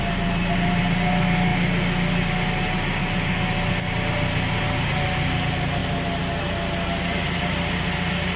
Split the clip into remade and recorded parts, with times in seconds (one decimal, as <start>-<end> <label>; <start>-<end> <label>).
0.0-8.4 recorded